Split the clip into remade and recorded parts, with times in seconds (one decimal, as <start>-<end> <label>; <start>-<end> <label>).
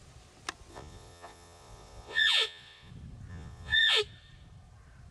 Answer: 0.0-0.7 recorded; 0.7-2.9 remade; 2.9-3.3 recorded; 3.3-4.0 remade; 4.0-5.1 recorded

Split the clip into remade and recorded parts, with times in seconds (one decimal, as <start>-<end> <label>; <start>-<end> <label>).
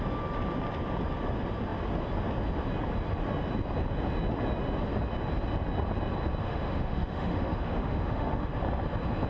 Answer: 0.0-6.4 recorded; 6.4-8.5 remade; 8.5-9.3 recorded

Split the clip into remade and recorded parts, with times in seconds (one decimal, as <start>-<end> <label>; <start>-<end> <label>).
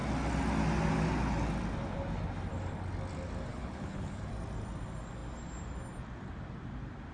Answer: 0.0-3.5 recorded; 3.5-4.3 remade; 4.3-7.1 recorded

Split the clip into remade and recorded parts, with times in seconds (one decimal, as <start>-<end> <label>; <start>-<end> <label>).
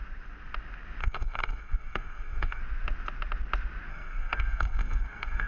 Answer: 0.0-1.0 recorded; 1.0-2.6 remade; 2.6-3.9 recorded; 3.9-5.5 remade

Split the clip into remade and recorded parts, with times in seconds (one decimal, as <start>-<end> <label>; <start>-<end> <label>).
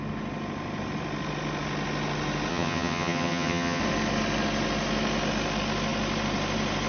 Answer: 0.0-2.5 recorded; 2.5-3.8 remade; 3.8-6.9 recorded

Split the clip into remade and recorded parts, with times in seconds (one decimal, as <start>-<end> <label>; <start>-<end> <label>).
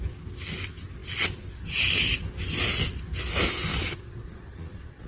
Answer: 0.0-3.7 recorded; 3.7-5.1 remade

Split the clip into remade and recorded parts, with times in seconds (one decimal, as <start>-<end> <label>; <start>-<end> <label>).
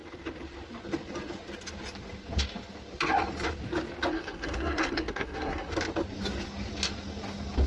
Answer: 0.0-4.1 recorded; 4.1-5.7 remade; 5.7-7.7 recorded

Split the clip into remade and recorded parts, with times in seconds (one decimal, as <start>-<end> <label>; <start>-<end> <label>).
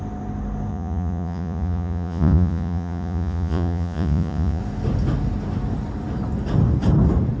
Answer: 0.0-0.7 recorded; 0.7-4.6 remade; 4.6-7.4 recorded